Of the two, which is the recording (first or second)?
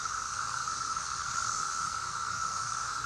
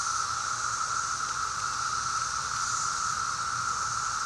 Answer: second